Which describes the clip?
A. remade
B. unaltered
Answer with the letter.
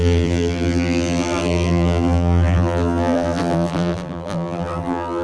A